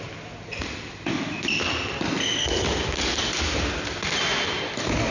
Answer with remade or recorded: recorded